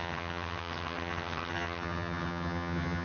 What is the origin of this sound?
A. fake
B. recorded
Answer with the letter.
A